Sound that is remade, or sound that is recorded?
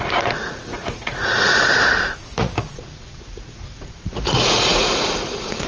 remade